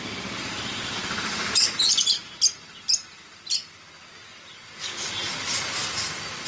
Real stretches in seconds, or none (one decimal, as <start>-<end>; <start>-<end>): 0.0-1.3; 2.3-6.5